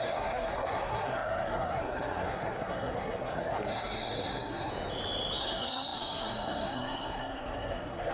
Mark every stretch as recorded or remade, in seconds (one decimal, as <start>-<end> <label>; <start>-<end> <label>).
0.0-4.7 remade; 4.7-5.4 recorded; 5.4-8.1 remade